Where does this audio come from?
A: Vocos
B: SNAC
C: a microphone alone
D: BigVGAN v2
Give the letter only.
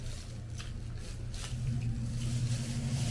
C